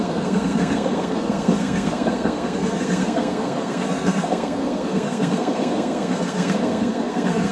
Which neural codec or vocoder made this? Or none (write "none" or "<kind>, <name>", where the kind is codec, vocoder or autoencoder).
codec, SNAC